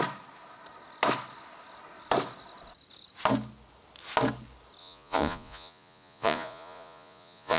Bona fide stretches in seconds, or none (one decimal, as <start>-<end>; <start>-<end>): 0.0-4.8